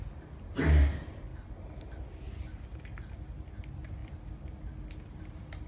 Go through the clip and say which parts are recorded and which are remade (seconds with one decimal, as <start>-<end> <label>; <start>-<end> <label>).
0.0-5.7 recorded